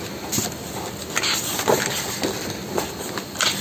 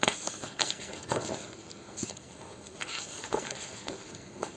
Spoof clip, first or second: second